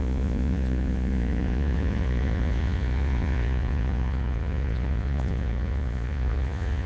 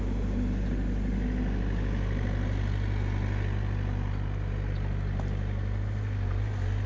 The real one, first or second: second